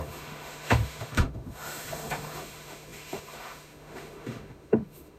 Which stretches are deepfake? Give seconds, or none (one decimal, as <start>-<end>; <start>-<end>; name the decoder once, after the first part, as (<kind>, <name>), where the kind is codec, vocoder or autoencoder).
0.0-5.2 (autoencoder, DAC-VAE)